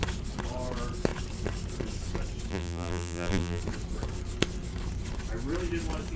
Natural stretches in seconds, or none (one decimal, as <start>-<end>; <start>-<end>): 0.0-2.5; 3.6-6.2